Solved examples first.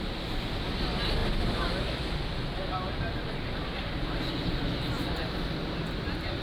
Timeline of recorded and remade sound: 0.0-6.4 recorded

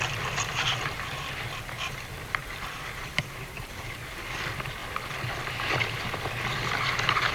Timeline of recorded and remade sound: 0.0-2.4 recorded; 2.4-4.1 remade; 4.1-7.3 recorded

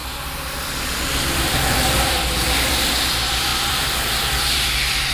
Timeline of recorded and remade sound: 0.0-2.7 remade; 2.7-3.5 recorded; 3.5-5.1 remade